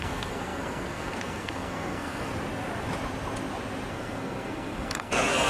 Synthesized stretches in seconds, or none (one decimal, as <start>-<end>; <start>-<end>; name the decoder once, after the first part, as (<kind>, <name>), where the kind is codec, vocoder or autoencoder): 0.0-2.3 (codec, SNAC); 3.9-5.5

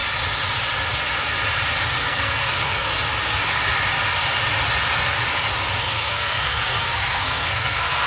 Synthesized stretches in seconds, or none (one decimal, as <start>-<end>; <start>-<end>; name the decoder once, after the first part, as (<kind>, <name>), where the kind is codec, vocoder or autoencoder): 2.0-2.9 (codec, SNAC); 5.8-8.1

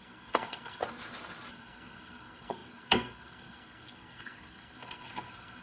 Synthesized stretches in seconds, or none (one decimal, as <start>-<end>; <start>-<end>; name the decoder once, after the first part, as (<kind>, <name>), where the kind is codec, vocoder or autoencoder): 0.0-0.8 (codec, SNAC); 1.5-5.6

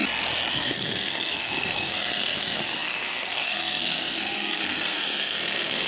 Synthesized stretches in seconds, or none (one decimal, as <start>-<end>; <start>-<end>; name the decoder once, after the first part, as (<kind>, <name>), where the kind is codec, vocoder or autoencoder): 0.5-5.9 (codec, SNAC)

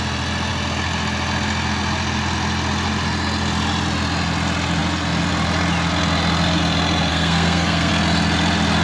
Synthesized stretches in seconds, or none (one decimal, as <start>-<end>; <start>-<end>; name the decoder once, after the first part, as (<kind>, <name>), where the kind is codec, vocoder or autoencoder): 7.1-7.9 (codec, SNAC)

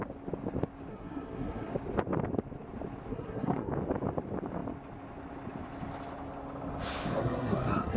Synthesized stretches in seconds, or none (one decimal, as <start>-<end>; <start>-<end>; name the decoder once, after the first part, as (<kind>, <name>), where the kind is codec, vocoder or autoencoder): 0.9-1.7 (codec, SNAC); 3.1-3.7; 7.2-8.0

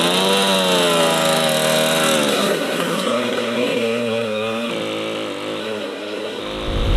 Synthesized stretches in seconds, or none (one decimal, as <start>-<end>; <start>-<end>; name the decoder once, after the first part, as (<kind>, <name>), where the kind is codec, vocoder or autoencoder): 2.3-4.7 (codec, SNAC); 5.6-6.4

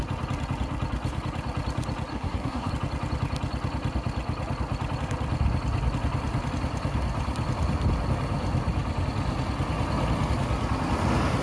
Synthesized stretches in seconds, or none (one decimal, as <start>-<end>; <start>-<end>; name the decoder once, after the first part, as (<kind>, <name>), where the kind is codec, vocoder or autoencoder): 2.1-2.7 (codec, SNAC)